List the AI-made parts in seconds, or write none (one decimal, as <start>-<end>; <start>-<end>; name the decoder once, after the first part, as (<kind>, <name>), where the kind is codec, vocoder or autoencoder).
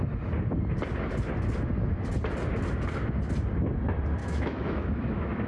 4.2-5.5 (autoencoder, DAC-VAE)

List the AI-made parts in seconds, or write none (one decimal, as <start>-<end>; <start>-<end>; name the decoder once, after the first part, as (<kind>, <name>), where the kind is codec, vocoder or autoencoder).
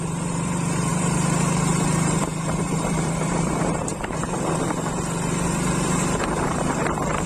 0.0-7.3 (vocoder, BigVGAN v2)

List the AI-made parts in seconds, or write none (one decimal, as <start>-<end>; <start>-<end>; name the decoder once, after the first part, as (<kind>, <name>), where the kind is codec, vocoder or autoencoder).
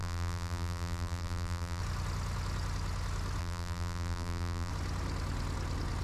0.0-1.8 (vocoder, BigVGAN v2); 3.4-4.7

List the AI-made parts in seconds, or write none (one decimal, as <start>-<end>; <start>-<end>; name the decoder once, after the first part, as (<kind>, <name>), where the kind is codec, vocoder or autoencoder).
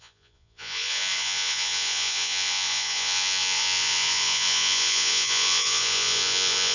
0.0-6.7 (vocoder, Vocos)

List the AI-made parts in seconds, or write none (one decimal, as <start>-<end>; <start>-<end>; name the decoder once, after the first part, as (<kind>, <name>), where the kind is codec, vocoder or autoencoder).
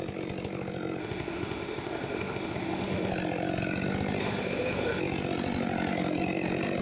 1.0-3.1 (autoencoder, DAC-VAE); 4.2-5.0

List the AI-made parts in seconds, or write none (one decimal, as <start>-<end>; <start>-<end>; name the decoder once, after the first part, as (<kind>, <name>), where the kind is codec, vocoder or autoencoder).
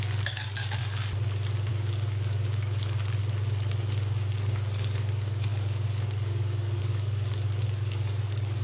0.0-0.8 (codec, DAC); 1.7-3.2; 3.7-8.6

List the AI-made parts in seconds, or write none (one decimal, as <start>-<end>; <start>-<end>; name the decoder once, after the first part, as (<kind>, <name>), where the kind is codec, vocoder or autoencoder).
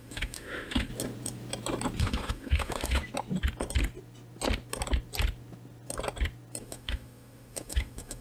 0.0-0.9 (autoencoder, DAC-VAE); 2.0-3.0; 6.6-8.2